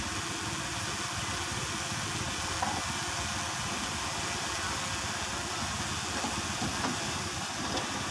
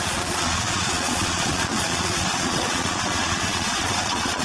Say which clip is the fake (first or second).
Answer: second